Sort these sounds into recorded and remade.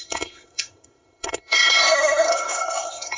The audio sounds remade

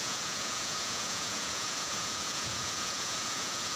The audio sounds remade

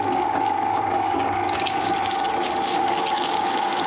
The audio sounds remade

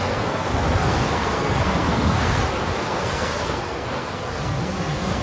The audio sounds remade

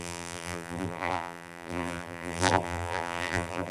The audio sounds remade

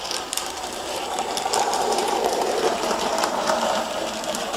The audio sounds remade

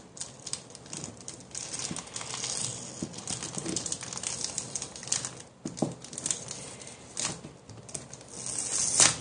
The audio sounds recorded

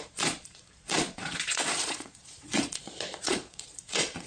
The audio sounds remade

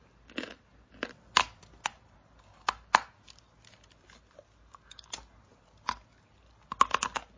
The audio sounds recorded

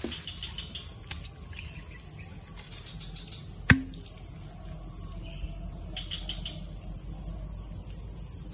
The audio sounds recorded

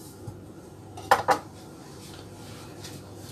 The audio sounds recorded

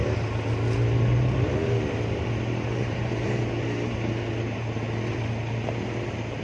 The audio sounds recorded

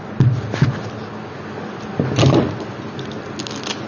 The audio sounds recorded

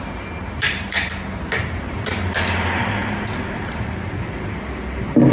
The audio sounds recorded